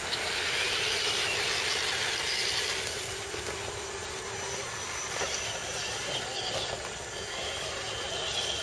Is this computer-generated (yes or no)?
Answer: no